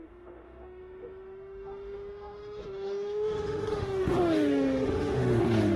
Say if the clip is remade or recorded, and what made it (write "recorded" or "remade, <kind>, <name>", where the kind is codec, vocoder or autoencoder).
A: remade, autoencoder, DAC-VAE